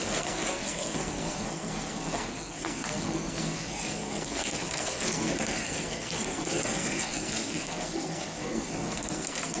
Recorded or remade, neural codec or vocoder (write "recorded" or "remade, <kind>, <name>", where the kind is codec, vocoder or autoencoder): remade, codec, SNAC